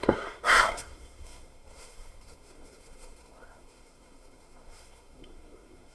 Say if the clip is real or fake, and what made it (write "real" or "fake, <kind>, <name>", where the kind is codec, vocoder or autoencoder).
fake, codec, SNAC